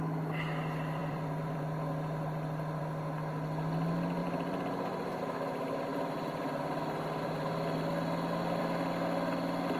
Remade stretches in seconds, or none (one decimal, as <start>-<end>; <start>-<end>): 1.0-2.8; 4.2-5.2; 5.9-8.6